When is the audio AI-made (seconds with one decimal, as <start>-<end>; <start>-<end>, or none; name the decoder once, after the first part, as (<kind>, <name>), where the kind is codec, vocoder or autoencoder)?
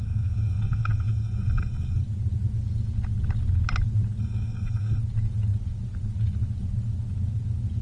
0.0-2.0 (codec, SNAC); 4.2-5.0